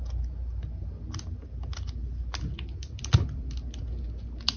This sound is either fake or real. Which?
real